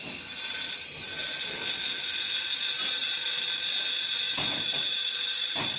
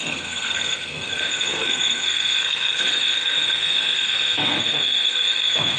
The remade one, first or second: second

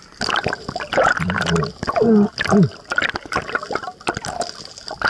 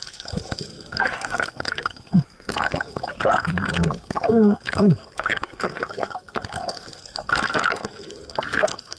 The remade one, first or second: second